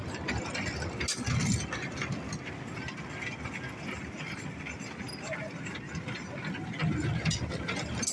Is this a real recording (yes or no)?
yes